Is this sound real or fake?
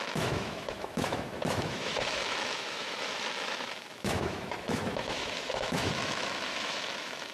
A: fake